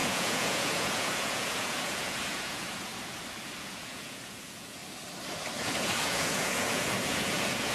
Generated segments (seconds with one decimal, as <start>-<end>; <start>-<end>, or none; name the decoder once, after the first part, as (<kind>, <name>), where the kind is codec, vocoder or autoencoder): 0.0-2.9 (vocoder, Vocos); 3.6-4.8; 5.6-7.7